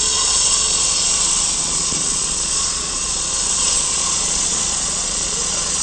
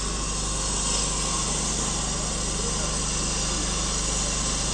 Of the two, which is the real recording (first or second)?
second